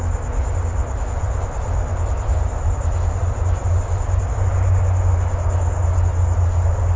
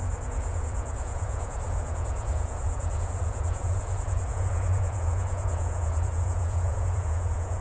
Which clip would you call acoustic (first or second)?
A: first